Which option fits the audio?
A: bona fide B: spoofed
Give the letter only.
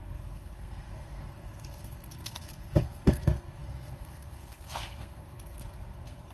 B